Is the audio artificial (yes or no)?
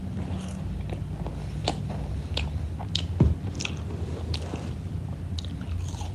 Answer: no